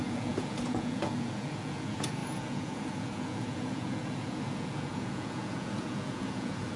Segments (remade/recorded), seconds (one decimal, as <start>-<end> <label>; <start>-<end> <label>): 0.0-6.8 remade